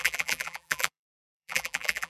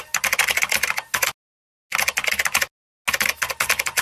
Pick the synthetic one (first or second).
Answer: first